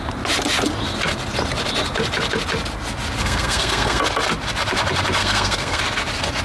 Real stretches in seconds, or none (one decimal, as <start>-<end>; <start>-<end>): 0.0-3.2; 4.0-5.2; 5.8-6.4